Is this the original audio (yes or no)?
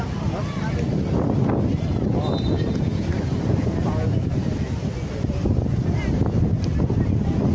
yes